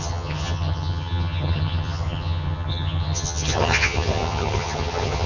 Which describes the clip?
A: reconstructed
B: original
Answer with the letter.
A